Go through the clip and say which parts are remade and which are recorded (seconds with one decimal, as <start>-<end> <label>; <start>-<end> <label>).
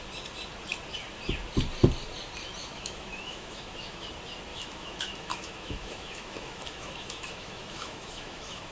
0.0-2.6 recorded; 2.6-4.1 remade; 4.1-4.5 recorded; 4.5-8.7 remade